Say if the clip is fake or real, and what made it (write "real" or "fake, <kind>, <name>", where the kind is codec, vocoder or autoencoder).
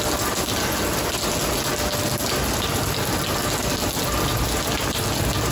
real